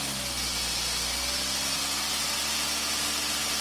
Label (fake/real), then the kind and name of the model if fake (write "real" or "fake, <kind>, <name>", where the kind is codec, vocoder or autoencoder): real